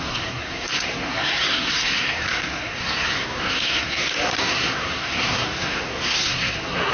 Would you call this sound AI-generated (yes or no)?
yes